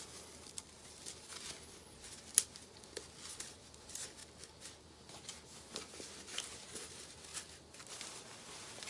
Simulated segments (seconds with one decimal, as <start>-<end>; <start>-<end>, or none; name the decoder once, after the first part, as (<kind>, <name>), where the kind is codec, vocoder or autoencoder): 0.0-4.2 (vocoder, BigVGAN v2); 5.6-8.9